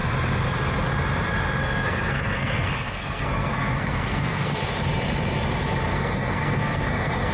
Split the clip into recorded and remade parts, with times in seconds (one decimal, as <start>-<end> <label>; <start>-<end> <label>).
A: 0.0-1.6 recorded; 1.6-4.6 remade; 4.6-5.9 recorded; 5.9-7.3 remade